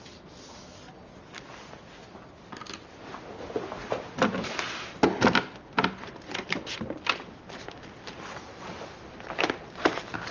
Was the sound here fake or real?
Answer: real